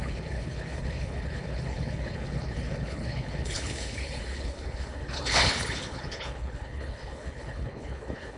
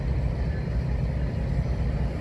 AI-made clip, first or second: first